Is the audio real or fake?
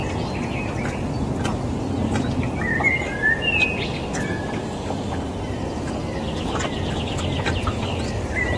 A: real